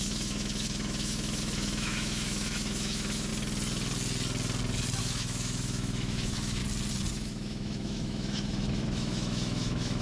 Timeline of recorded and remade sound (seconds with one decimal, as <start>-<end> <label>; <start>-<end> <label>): 0.0-3.3 remade; 3.3-5.0 recorded; 5.0-6.6 remade; 6.6-7.1 recorded; 7.1-10.0 remade

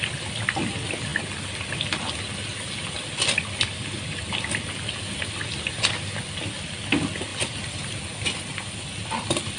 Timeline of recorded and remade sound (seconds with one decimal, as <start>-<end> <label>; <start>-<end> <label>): 0.0-7.3 recorded; 7.3-8.0 remade; 8.0-9.6 recorded

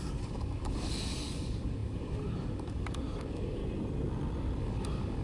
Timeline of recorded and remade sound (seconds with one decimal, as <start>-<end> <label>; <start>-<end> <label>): 0.0-3.6 remade; 3.6-4.6 recorded; 4.6-5.2 remade

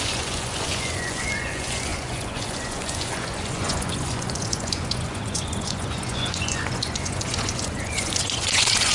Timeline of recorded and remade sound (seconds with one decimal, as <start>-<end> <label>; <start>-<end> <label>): 0.0-8.9 remade